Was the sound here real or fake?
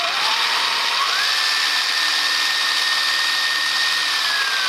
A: real